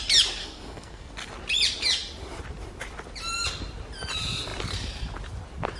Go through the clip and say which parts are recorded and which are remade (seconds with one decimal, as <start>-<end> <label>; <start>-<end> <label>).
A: 0.0-0.4 recorded; 0.4-1.1 remade; 1.1-5.8 recorded